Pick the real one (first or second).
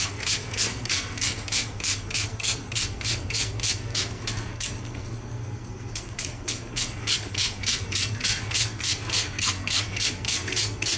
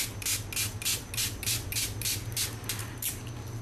second